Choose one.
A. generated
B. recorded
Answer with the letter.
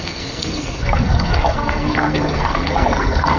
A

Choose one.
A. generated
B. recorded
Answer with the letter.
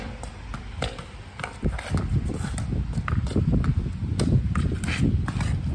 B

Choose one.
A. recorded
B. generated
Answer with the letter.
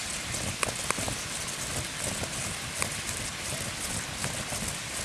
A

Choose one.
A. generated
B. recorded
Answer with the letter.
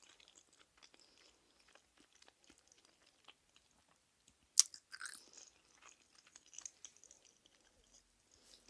B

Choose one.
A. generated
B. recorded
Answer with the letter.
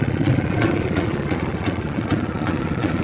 A